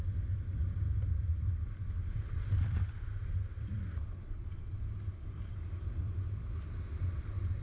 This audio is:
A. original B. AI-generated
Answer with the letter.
A